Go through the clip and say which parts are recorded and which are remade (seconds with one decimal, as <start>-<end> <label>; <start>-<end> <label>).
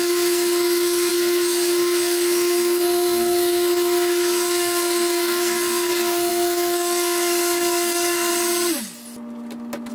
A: 0.0-8.3 remade; 8.3-9.9 recorded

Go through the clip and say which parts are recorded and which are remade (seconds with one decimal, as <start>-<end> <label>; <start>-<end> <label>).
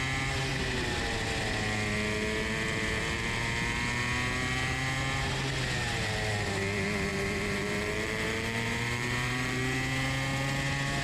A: 0.0-7.1 recorded; 7.1-9.6 remade; 9.6-11.0 recorded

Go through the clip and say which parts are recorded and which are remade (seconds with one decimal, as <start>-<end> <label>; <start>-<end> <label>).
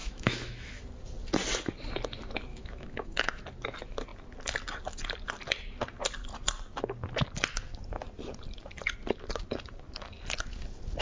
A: 0.0-0.8 remade; 0.8-2.5 recorded; 2.5-3.4 remade; 3.4-11.0 recorded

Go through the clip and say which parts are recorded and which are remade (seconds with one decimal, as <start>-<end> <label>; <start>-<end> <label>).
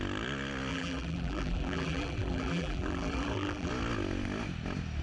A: 0.0-0.7 recorded; 0.7-3.7 remade; 3.7-5.0 recorded